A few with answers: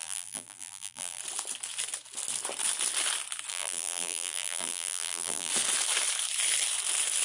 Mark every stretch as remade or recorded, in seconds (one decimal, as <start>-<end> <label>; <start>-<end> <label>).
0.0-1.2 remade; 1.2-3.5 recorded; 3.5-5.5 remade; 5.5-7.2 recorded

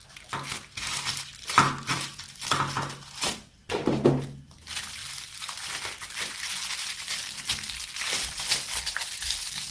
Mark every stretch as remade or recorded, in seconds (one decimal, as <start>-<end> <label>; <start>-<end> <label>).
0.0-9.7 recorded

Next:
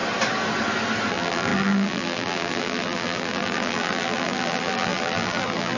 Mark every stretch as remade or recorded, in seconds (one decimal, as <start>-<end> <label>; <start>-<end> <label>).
0.0-1.1 recorded; 1.1-5.8 remade

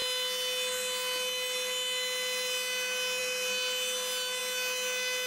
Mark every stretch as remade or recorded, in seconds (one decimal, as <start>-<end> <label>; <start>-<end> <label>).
0.0-5.3 recorded

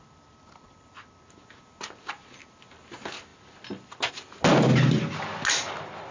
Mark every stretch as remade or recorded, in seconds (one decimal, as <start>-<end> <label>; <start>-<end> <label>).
0.0-6.1 recorded